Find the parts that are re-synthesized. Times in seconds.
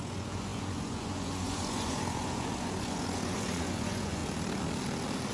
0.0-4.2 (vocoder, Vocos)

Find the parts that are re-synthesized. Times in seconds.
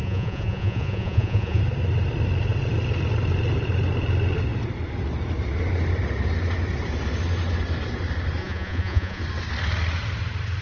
0.0-1.6 (vocoder, Vocos); 8.4-9.2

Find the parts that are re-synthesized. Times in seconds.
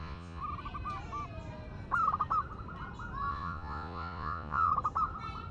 0.0-0.4 (vocoder, Vocos); 3.3-4.7